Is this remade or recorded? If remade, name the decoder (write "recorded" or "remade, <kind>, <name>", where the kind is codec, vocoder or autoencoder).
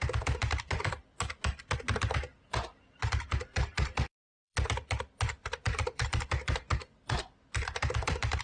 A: remade, vocoder, BigVGAN v2